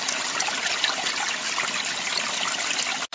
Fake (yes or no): no